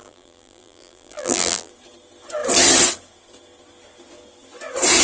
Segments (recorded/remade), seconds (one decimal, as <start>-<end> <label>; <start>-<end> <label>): 0.0-1.7 remade; 1.7-5.0 recorded